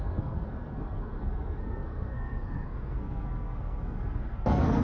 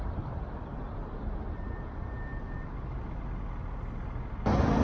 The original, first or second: second